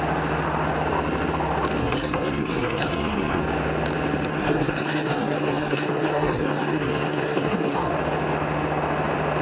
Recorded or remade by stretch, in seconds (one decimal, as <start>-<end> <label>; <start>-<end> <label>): 0.0-1.8 recorded; 1.8-3.4 remade; 3.4-4.3 recorded; 4.3-7.9 remade; 7.9-9.4 recorded